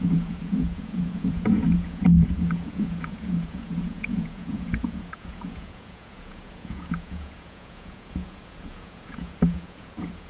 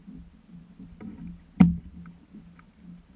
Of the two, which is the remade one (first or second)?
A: first